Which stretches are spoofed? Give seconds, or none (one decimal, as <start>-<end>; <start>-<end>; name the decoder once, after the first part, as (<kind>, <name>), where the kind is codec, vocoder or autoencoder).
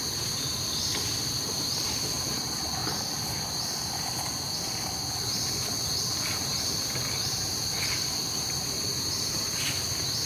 none